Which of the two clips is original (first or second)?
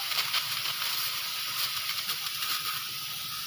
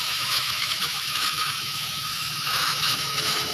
first